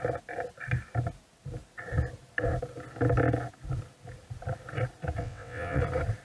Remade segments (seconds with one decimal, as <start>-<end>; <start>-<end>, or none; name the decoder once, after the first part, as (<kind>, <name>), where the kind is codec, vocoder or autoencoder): 5.2-5.8 (vocoder, WaveNeXt)